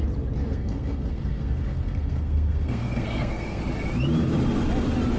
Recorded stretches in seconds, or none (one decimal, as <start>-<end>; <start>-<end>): 0.0-0.5; 3.6-5.2